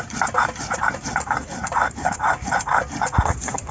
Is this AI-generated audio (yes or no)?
yes